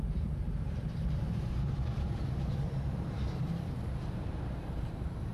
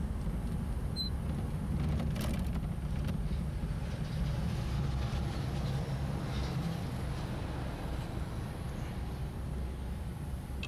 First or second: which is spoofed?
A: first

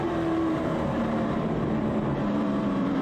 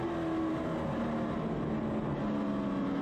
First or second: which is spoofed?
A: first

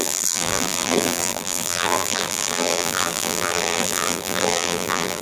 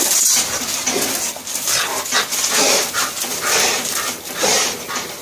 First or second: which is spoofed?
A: first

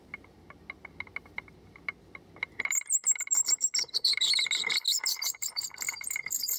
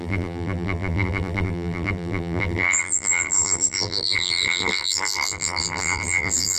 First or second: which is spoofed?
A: second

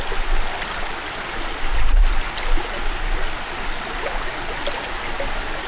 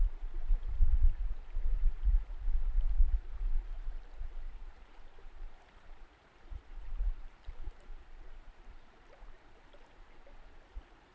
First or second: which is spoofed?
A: second